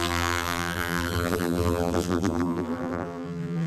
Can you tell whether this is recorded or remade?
remade